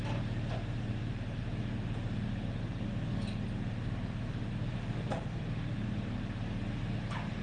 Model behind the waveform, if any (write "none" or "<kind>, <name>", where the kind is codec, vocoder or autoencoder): none